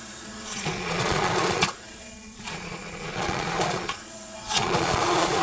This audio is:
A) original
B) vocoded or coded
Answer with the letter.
B